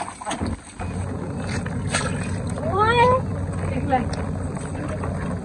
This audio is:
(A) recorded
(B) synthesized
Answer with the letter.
A